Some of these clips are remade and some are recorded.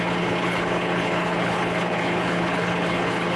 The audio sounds remade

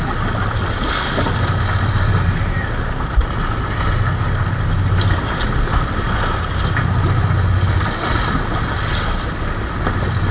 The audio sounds recorded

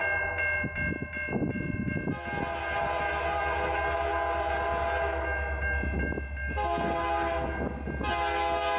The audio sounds recorded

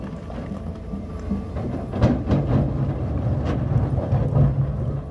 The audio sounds recorded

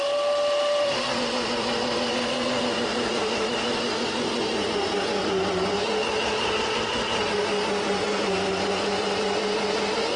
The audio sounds recorded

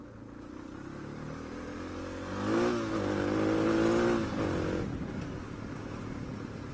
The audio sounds recorded